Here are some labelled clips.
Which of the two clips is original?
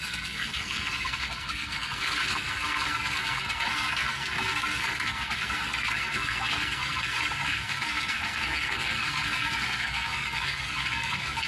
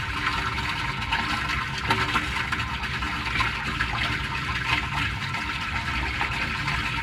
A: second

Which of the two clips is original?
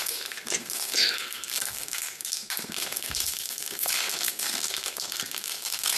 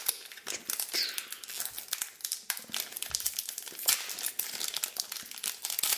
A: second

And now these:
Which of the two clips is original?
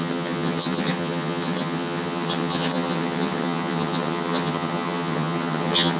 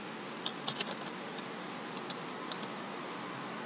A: second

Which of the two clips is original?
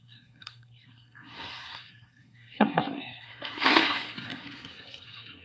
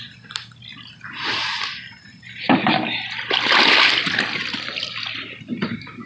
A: second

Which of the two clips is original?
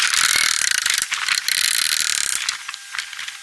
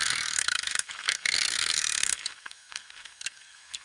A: first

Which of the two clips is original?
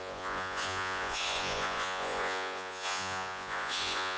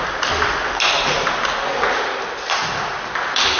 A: second